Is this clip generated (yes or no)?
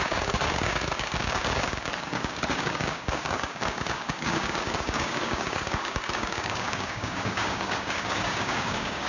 yes